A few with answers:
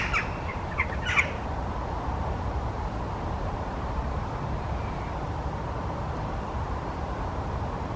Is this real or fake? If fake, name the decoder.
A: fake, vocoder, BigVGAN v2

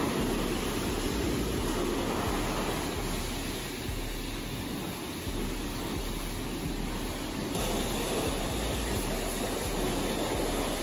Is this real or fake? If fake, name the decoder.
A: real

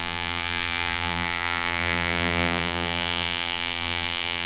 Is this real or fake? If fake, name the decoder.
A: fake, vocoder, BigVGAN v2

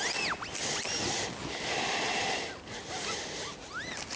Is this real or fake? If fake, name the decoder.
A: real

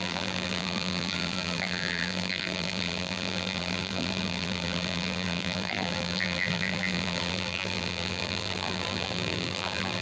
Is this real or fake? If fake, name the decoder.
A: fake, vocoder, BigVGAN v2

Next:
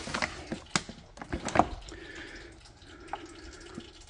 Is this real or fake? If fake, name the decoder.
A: real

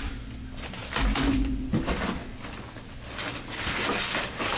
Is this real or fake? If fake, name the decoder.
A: fake, vocoder, BigVGAN v2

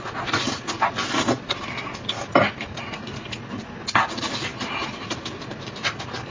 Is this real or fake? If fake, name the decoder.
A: fake, vocoder, BigVGAN v2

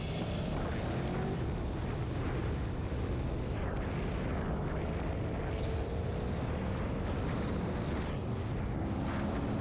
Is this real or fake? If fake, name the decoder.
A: real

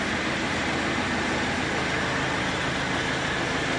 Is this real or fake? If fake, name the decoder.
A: real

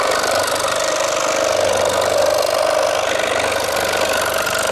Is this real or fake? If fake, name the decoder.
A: fake, vocoder, BigVGAN v2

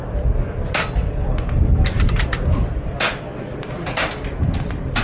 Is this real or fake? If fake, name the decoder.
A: real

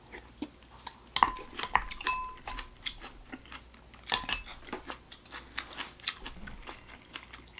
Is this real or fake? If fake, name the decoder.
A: real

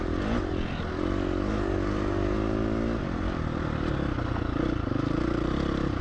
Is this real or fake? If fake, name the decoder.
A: real